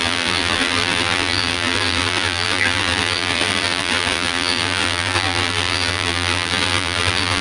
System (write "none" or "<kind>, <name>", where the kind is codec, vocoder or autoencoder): vocoder, BigVGAN v2